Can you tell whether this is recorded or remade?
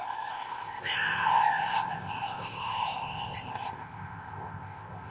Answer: remade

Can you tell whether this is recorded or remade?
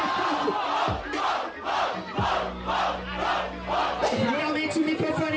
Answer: recorded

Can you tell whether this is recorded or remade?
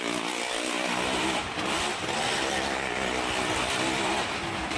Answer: recorded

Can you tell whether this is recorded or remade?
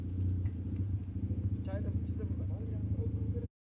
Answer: recorded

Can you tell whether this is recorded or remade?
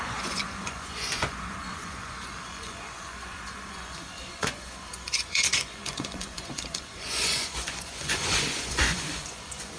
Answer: remade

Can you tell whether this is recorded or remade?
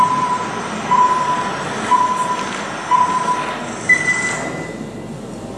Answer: recorded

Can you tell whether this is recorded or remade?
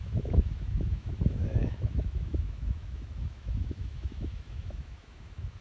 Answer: remade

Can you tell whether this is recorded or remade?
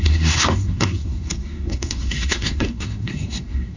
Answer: remade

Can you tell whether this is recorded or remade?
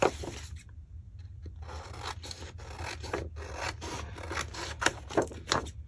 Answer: recorded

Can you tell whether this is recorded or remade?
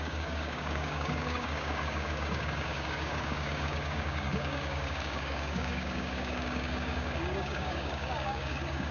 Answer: remade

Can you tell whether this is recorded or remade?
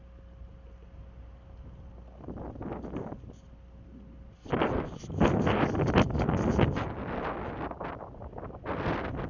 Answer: recorded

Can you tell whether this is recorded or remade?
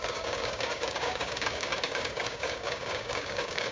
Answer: remade